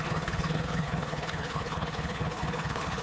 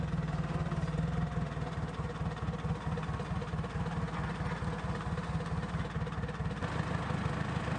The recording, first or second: second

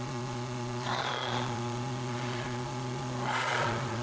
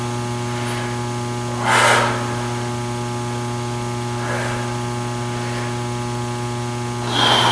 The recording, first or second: second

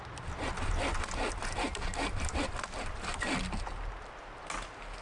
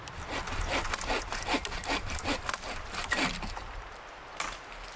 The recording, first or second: first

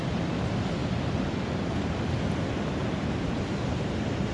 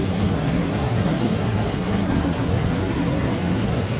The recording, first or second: first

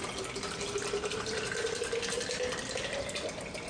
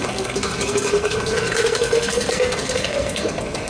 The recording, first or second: first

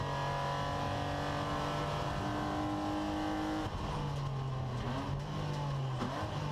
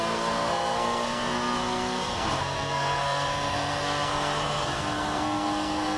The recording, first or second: first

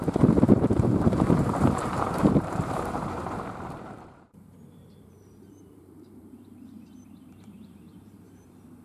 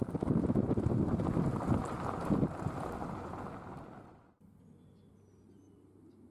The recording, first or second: second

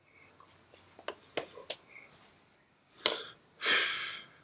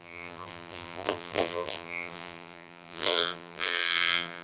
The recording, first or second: first